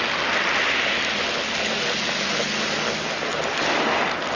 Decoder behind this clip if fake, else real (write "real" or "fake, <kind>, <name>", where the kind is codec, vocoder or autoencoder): real